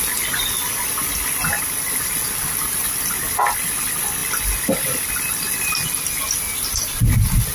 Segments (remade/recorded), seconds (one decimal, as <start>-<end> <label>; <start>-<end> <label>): 0.0-7.5 recorded